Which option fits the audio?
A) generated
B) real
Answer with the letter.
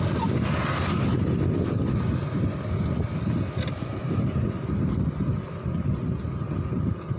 B